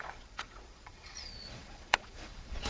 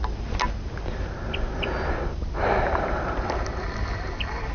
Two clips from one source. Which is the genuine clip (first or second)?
second